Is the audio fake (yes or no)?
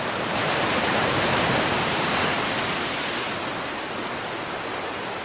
yes